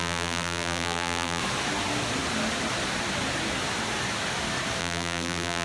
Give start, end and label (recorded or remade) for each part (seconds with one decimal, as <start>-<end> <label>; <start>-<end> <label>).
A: 0.0-1.4 remade; 1.4-4.8 recorded; 4.8-5.6 remade